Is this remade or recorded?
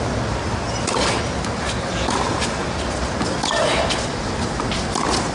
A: recorded